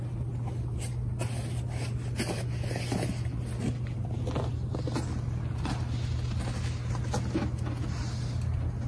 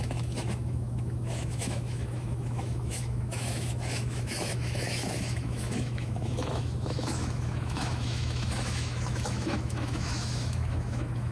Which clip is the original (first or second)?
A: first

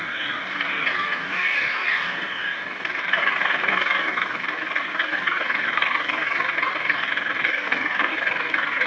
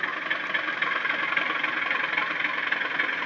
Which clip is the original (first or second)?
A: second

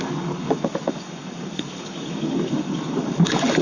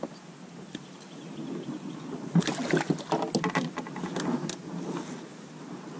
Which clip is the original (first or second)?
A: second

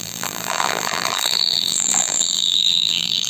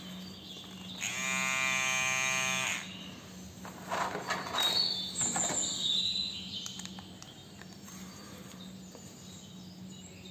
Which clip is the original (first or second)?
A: second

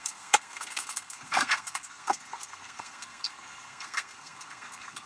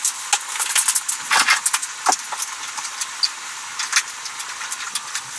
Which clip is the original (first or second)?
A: second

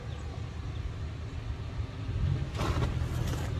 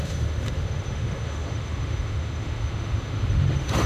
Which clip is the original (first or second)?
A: first